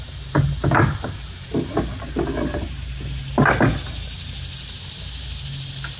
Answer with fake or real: real